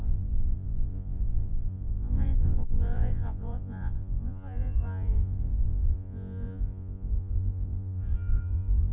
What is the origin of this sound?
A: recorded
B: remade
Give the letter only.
B